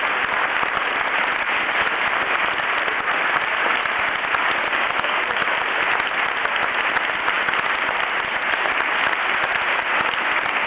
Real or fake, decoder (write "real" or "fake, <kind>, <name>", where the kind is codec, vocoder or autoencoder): real